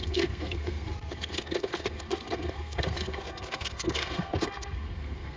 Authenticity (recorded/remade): remade